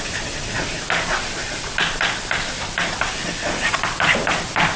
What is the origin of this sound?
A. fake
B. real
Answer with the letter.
B